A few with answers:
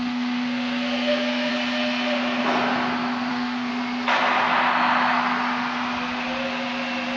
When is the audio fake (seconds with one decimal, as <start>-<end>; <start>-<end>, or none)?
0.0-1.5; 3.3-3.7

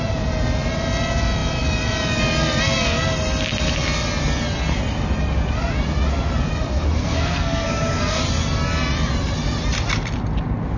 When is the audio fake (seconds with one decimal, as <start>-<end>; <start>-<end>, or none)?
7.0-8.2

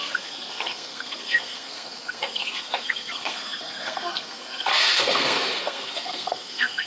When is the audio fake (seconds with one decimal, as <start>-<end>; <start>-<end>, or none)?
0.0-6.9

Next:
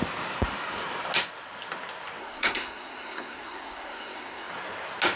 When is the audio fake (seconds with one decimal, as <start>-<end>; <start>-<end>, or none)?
2.2-4.5

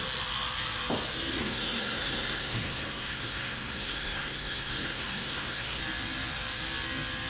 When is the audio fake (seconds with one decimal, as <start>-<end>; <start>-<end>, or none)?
1.4-5.8

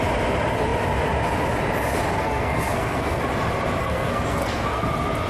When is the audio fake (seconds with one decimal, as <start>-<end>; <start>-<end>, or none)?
2.1-3.2; 3.8-4.8